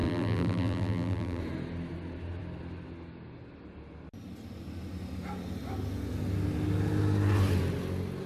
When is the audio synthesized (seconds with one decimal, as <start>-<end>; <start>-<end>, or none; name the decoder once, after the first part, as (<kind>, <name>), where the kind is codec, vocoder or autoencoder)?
0.0-1.4 (vocoder, BigVGAN v2)